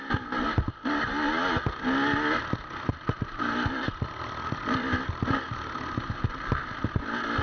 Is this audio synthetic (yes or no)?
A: no